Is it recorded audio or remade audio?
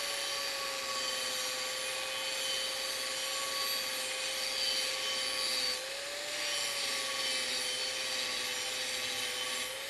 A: recorded